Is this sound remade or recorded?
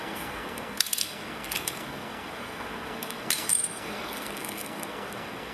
remade